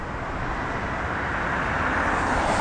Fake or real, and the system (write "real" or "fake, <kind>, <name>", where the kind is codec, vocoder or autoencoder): real